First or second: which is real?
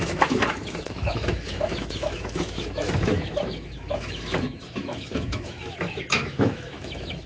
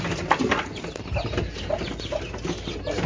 second